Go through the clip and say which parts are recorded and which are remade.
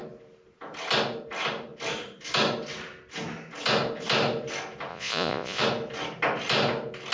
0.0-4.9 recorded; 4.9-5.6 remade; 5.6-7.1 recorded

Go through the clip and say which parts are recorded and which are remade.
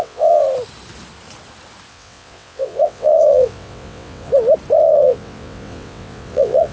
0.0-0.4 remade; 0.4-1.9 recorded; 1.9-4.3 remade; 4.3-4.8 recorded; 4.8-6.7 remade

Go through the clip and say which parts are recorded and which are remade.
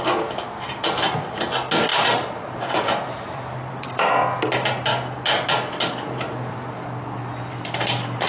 0.0-1.9 recorded; 1.9-4.1 remade; 4.1-8.3 recorded